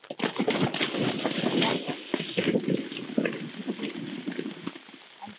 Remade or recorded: recorded